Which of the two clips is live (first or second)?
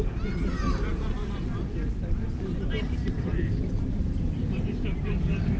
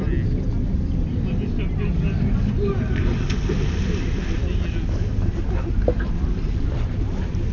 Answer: second